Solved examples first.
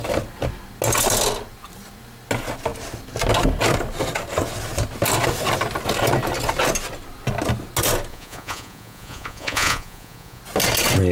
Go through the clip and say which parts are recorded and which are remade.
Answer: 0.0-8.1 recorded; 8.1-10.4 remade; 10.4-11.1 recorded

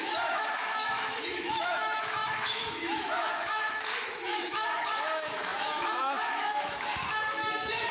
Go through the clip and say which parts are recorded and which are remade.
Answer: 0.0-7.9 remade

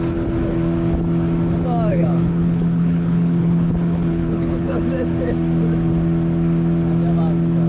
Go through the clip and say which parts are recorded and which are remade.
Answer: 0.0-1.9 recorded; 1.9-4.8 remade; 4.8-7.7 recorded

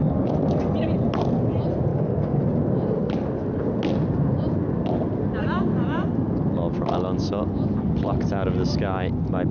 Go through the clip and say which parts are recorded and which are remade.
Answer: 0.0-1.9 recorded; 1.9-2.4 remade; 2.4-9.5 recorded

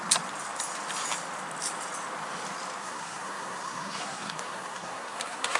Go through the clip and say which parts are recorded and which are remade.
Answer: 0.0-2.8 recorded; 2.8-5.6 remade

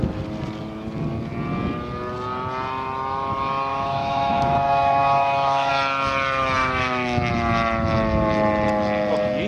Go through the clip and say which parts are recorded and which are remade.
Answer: 0.0-3.7 recorded; 3.7-5.7 remade; 5.7-6.6 recorded; 6.6-7.3 remade; 7.3-9.5 recorded

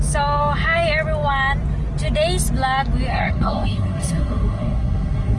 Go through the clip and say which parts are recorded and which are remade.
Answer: 0.0-3.1 recorded; 3.1-5.4 remade

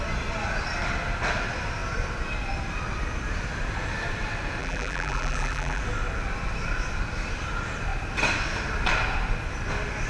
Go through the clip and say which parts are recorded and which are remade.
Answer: 0.0-4.6 recorded; 4.6-5.8 remade; 5.8-10.1 recorded